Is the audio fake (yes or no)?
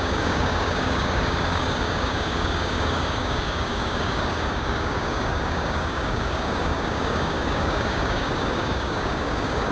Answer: yes